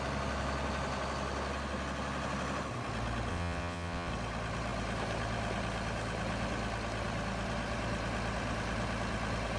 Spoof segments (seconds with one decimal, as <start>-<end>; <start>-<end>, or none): 3.3-4.1